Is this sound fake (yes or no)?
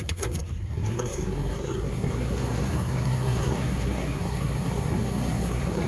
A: yes